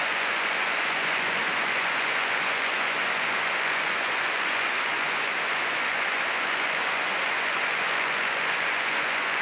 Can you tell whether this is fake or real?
fake